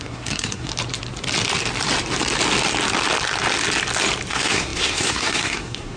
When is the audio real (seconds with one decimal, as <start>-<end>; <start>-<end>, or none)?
0.7-4.3